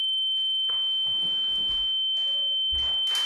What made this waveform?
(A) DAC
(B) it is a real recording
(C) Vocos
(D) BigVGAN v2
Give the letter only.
B